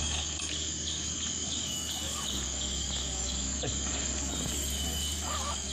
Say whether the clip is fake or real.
fake